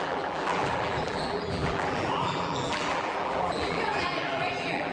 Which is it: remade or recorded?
remade